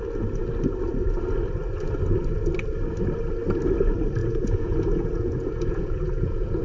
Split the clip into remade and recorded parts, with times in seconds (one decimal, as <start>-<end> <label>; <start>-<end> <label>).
0.0-4.2 recorded; 4.2-6.6 remade